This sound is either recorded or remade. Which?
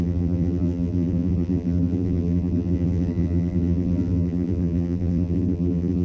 remade